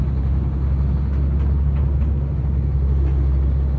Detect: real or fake real